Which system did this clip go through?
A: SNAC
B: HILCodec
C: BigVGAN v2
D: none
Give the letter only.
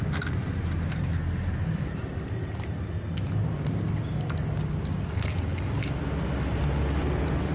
D